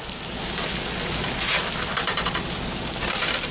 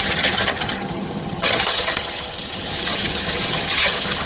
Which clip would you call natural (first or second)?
first